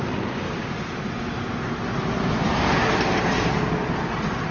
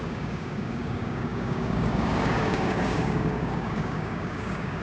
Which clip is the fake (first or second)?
second